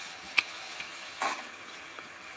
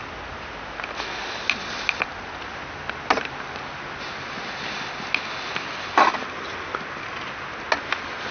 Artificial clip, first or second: first